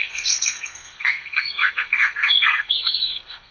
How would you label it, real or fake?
fake